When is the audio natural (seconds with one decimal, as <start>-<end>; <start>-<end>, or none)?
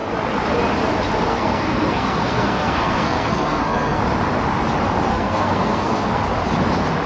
0.0-1.3; 4.0-5.1; 6.2-7.1